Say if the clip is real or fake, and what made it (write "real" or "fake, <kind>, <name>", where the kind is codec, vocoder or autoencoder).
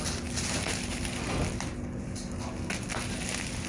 real